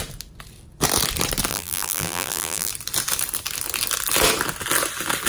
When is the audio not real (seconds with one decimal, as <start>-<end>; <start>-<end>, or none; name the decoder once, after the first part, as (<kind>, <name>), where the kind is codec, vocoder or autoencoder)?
1.5-2.7 (vocoder, BigVGAN v2)